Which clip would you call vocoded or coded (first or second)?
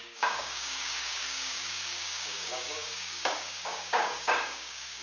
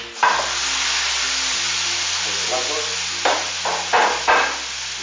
first